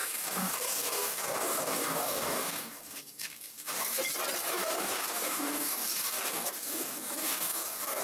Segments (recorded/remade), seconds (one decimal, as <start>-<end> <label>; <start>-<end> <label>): 0.0-4.0 remade; 4.0-4.5 recorded; 4.5-8.0 remade